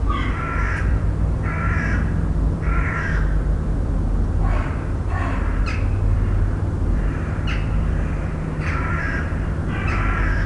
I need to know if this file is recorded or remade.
remade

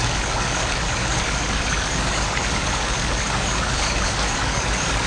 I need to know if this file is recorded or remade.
remade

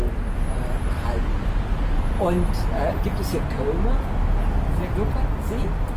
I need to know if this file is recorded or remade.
recorded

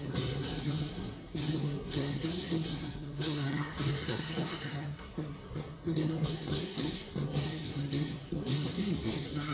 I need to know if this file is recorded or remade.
remade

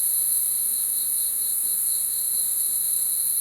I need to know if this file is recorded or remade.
remade